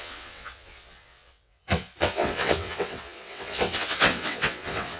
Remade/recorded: remade